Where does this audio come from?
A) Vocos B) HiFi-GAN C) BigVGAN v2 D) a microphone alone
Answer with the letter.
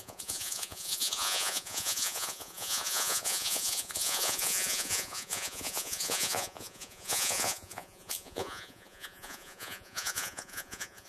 A